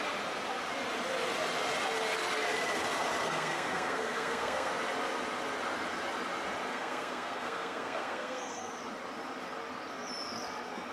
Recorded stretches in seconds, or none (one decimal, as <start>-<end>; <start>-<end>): 0.0-3.2; 4.7-6.7; 8.7-10.9